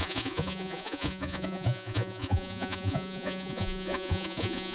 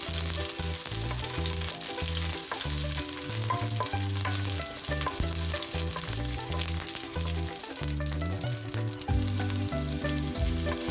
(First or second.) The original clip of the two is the second